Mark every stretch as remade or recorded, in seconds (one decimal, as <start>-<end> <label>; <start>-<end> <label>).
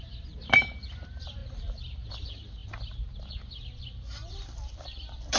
0.0-1.4 remade; 1.4-2.1 recorded; 2.1-2.6 remade; 2.6-4.3 recorded; 4.3-5.4 remade